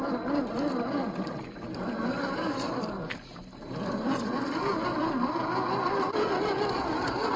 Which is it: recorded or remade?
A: recorded